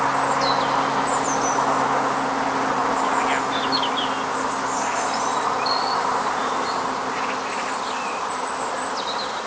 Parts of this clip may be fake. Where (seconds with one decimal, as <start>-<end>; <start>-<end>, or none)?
none